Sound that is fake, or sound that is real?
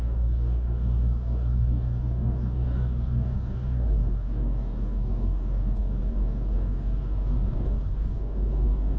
fake